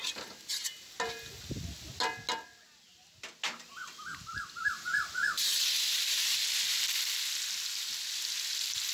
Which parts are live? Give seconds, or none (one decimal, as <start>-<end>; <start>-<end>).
0.0-8.9